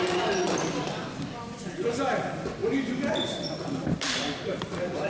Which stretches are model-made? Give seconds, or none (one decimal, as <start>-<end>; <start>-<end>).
none